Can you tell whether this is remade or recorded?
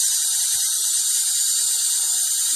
remade